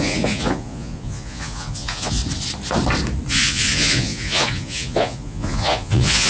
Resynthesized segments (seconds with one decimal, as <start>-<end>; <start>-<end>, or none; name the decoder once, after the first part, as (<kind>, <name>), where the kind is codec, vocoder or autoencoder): 0.0-2.2 (vocoder, Vocos); 3.3-6.3